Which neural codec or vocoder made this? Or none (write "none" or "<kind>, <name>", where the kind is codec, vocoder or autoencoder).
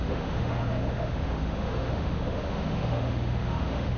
autoencoder, DAC-VAE